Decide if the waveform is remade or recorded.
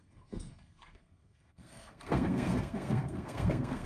remade